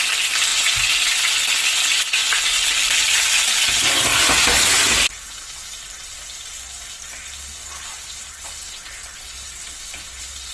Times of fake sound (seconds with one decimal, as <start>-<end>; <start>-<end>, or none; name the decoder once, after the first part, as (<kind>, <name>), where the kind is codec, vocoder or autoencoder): none